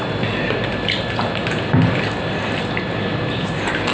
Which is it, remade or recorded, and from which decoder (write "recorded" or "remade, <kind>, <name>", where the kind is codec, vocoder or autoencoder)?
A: recorded